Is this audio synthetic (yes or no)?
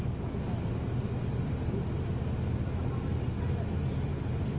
no